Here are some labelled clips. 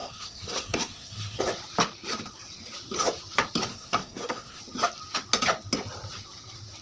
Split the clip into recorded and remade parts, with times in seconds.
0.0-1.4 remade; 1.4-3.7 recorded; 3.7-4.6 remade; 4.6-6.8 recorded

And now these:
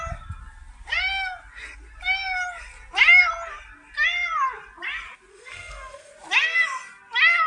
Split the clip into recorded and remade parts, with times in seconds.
0.0-5.3 recorded; 5.3-6.1 remade; 6.1-7.5 recorded

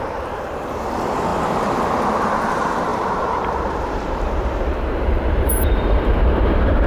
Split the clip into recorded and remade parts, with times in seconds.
0.0-6.9 remade

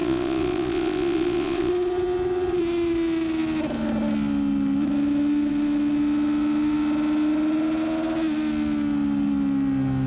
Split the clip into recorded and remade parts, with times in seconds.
0.0-1.7 remade; 1.7-10.1 recorded

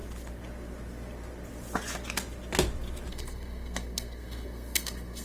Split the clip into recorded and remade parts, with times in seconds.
0.0-3.1 recorded; 3.1-5.2 remade

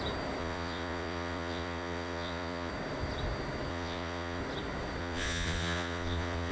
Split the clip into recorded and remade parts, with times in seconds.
0.0-0.4 recorded; 0.4-2.7 remade; 2.7-3.7 recorded; 3.7-4.4 remade; 4.4-5.0 recorded; 5.0-6.5 remade

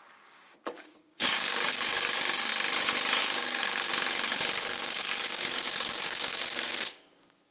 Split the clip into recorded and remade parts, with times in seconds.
0.0-2.5 remade; 2.5-3.2 recorded; 3.2-3.9 remade; 3.9-4.6 recorded; 4.6-7.5 remade

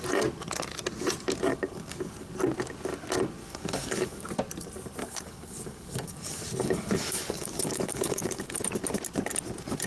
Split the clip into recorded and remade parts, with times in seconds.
0.0-1.5 recorded; 1.5-2.3 remade; 2.3-3.4 recorded; 3.4-4.3 remade; 4.3-5.0 recorded; 5.0-8.6 remade; 8.6-9.9 recorded